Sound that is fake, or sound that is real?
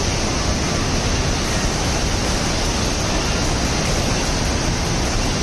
real